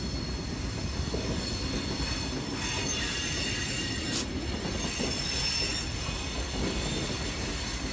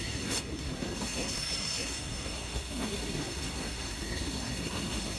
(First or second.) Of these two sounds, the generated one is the second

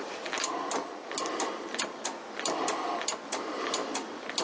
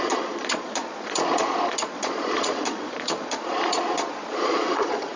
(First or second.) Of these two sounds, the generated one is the second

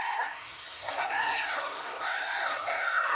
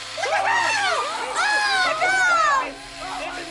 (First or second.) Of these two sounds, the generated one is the first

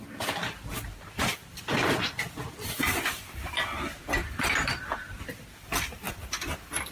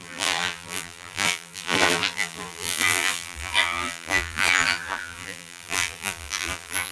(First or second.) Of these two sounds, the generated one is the second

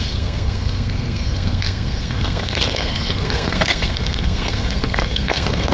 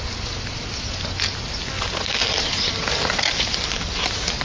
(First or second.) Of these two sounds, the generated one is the first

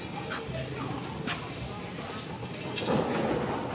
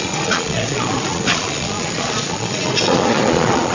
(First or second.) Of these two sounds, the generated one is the second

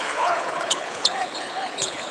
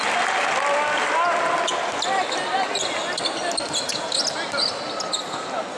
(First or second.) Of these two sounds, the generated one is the first